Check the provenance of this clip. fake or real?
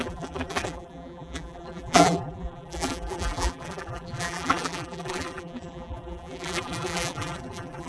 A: fake